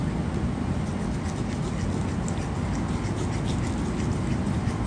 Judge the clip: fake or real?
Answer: real